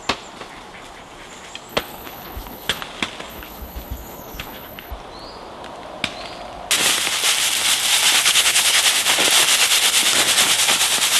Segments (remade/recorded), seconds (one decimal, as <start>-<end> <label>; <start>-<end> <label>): 0.0-1.7 recorded; 1.7-2.8 remade; 2.8-3.3 recorded; 3.3-4.9 remade; 4.9-8.2 recorded; 8.2-8.8 remade; 8.8-11.2 recorded